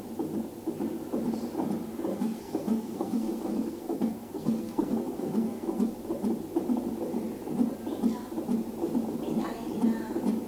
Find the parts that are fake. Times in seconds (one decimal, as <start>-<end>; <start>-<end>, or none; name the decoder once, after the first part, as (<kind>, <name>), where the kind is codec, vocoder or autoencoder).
2.1-5.9 (codec, SNAC)